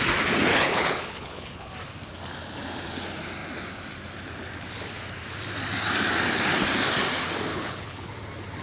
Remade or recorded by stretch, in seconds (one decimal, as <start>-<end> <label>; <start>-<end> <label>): 0.0-0.5 recorded; 0.5-1.7 remade; 1.7-7.5 recorded; 7.5-8.1 remade; 8.1-8.6 recorded